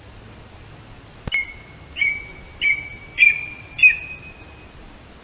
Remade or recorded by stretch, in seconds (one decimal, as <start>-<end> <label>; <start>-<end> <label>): 0.0-5.2 recorded